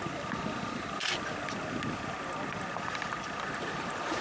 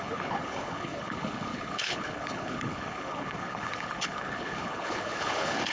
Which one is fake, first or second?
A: second